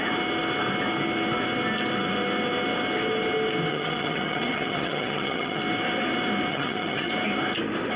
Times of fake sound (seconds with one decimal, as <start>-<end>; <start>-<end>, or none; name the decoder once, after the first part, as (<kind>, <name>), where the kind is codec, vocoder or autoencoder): 3.7-5.6 (vocoder, HiFi-GAN); 6.5-7.1